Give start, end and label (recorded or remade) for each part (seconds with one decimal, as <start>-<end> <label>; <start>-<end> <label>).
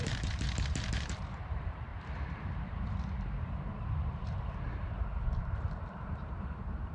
0.0-6.9 remade